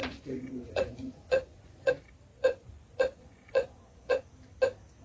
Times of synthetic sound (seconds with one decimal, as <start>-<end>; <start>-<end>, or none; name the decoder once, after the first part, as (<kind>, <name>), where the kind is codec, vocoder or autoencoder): 0.0-1.9 (vocoder, Vocos); 2.3-4.2